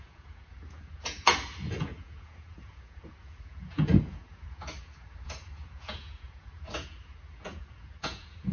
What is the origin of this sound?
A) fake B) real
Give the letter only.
A